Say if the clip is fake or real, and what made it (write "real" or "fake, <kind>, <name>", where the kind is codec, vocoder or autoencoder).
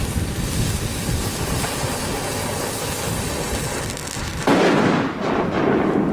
real